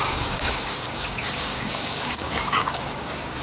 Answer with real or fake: fake